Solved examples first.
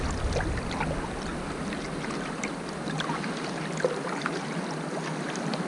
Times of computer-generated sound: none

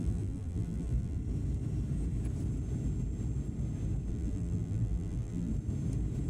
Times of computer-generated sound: 0.0-1.2 (vocoder, BigVGAN v2); 4.1-5.5

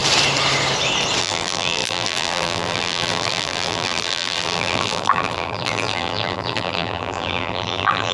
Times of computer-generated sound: 1.2-8.1 (vocoder, BigVGAN v2)

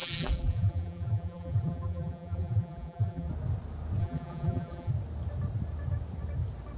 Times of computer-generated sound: 0.0-3.3 (vocoder, BigVGAN v2); 4.0-4.9